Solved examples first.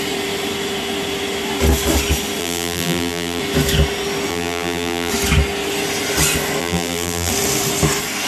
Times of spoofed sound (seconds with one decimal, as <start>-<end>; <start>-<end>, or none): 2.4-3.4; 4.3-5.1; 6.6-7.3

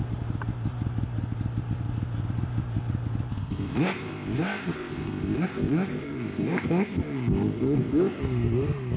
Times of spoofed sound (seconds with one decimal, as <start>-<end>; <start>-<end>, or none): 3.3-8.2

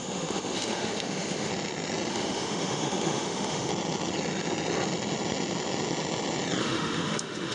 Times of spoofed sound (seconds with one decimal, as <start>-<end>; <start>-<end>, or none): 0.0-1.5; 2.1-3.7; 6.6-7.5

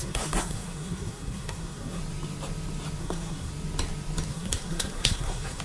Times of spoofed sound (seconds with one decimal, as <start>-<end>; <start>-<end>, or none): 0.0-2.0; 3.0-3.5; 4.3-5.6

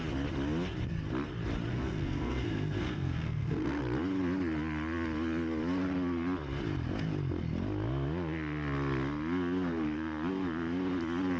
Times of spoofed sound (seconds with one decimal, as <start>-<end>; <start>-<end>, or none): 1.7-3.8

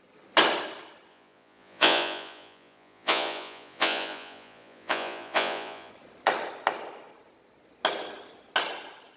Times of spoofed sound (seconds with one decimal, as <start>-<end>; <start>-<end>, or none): 1.1-5.9